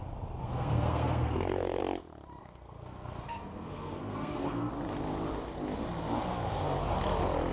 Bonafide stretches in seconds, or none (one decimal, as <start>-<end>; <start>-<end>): 0.0-0.4; 1.8-2.4; 4.7-7.5